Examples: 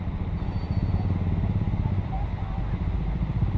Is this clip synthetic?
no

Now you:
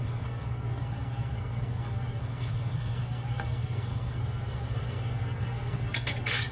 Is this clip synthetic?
yes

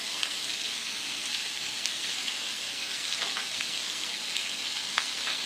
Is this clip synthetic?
yes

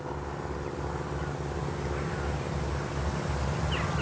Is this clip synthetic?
no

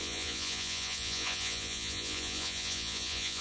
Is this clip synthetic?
yes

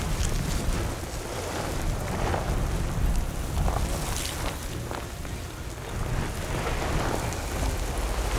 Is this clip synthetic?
no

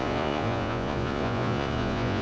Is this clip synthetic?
yes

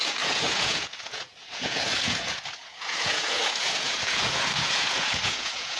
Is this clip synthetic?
yes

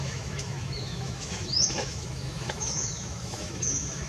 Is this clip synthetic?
yes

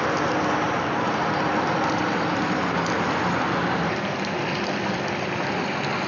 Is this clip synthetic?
no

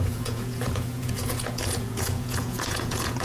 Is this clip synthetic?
yes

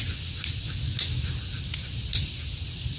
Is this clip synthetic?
no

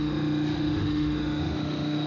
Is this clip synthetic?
yes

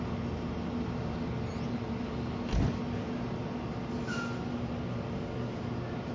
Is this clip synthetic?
no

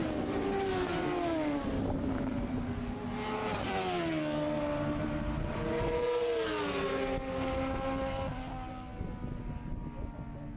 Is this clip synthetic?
no